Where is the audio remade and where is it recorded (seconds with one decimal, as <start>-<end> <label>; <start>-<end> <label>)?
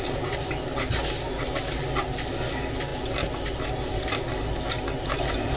0.0-5.6 recorded